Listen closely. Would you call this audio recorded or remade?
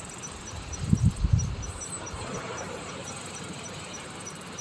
remade